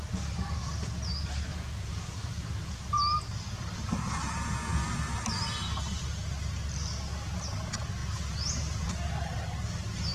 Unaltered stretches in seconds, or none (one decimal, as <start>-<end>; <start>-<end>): 0.0-1.5; 3.0-8.0; 8.9-10.1